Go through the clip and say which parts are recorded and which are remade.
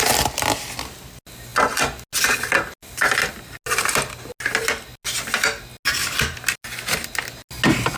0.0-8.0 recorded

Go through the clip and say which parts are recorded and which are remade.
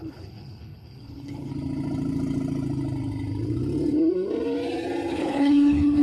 0.0-1.5 remade; 1.5-5.1 recorded; 5.1-6.0 remade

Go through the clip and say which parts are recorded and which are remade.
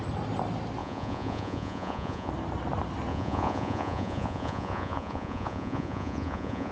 0.0-0.8 recorded; 0.8-2.3 remade; 2.3-3.1 recorded; 3.1-6.7 remade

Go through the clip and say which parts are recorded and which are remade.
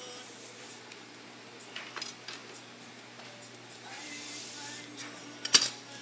0.0-6.0 recorded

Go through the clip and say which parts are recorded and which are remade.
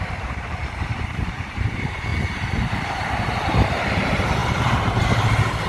0.0-2.1 remade; 2.1-2.7 recorded; 2.7-5.7 remade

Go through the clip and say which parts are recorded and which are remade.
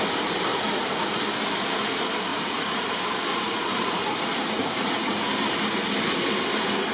0.0-0.5 recorded; 0.5-1.2 remade; 1.2-2.3 recorded; 2.3-2.8 remade; 2.8-3.3 recorded; 3.3-5.2 remade; 5.2-6.9 recorded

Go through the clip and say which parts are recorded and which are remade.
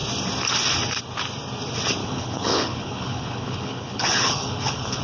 0.0-2.0 recorded; 2.0-5.0 remade